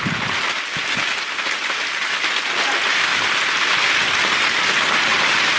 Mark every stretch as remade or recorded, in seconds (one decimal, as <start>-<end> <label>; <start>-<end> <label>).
0.0-5.6 recorded